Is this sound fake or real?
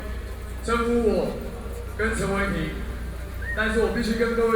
real